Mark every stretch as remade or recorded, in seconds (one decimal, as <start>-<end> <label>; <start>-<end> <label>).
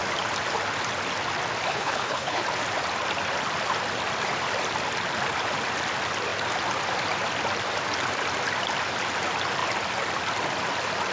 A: 0.0-1.7 recorded; 1.7-2.4 remade; 2.4-11.1 recorded